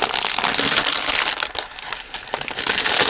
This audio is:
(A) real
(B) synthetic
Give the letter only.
A